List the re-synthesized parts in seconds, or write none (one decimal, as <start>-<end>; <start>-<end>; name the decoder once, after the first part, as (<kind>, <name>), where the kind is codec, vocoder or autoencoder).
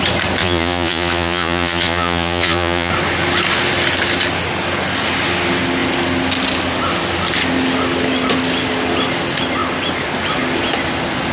0.4-2.9 (vocoder, Vocos)